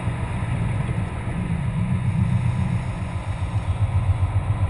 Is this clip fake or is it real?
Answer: fake